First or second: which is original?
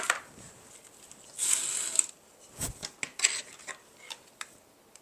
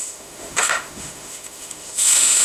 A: first